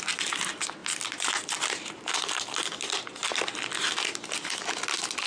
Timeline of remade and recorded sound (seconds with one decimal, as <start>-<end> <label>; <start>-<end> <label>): 0.0-5.3 recorded